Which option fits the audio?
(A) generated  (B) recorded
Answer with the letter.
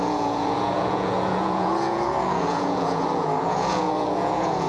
A